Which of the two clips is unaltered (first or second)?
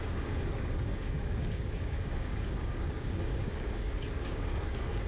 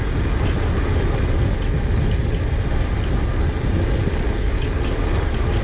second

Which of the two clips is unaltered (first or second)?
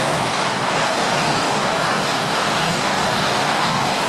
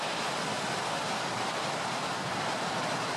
second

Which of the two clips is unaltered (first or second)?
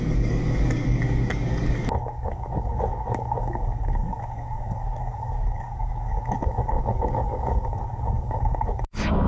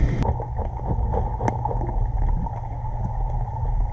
second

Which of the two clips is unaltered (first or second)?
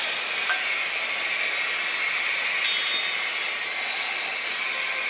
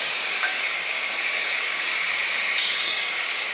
first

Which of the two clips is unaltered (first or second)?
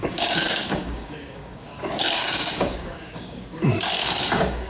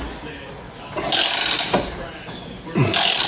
second